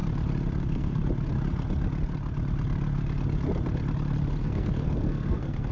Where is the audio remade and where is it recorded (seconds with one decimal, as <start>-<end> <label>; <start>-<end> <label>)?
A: 0.0-0.6 recorded; 0.6-1.0 remade; 1.0-4.4 recorded; 4.4-5.7 remade